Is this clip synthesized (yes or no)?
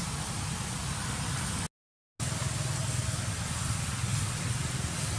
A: no